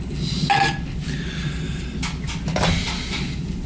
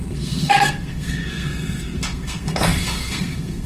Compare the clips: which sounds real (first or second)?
first